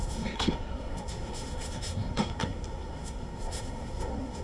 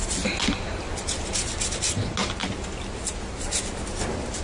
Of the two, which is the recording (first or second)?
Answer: second